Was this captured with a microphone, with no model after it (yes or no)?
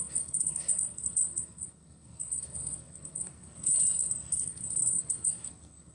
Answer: no